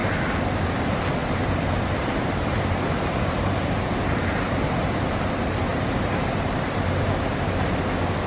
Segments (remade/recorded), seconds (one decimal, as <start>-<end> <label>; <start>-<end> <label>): 0.0-0.6 remade; 0.6-1.2 recorded; 1.2-5.3 remade; 5.3-5.7 recorded; 5.7-7.8 remade; 7.8-8.3 recorded